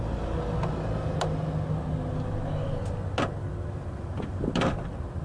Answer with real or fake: real